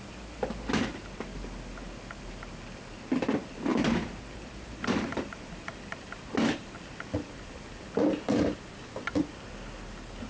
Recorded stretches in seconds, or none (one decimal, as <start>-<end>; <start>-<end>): 0.0-3.7; 8.1-10.3